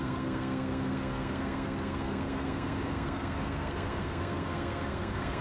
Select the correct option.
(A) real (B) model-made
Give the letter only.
B